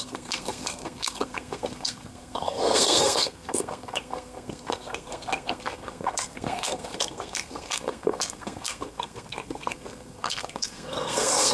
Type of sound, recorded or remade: remade